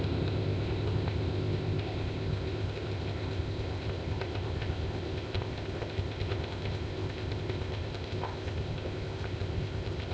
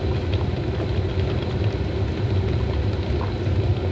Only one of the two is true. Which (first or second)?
second